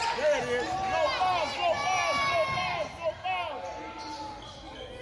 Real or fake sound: real